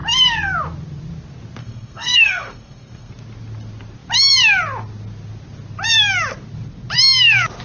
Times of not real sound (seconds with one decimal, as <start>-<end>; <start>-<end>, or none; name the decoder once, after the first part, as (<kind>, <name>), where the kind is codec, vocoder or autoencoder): 1.6-3.1 (codec, SNAC)

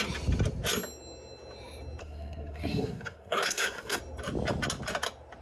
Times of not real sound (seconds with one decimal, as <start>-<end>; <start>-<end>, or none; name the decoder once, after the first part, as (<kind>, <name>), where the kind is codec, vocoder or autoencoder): 2.0-4.0 (codec, SNAC)

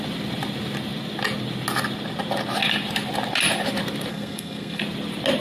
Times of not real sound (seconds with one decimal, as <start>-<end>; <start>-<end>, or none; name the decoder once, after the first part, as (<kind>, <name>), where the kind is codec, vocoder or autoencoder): 4.1-4.8 (codec, SNAC)

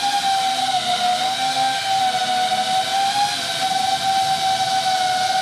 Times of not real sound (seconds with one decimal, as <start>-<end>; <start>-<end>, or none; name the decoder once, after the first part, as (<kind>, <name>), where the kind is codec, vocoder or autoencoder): 0.6-2.0 (codec, SNAC)

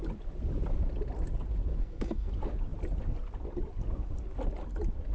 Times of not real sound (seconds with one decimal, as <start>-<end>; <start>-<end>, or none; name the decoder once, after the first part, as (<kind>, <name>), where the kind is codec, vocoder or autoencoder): 1.8-2.3 (codec, SNAC)